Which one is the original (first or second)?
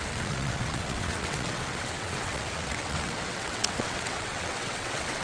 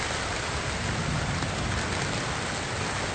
second